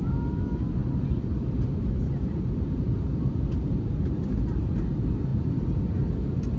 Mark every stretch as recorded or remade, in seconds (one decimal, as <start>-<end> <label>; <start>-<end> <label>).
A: 0.0-0.8 recorded; 0.8-4.8 remade; 4.8-5.3 recorded; 5.3-5.8 remade; 5.8-6.6 recorded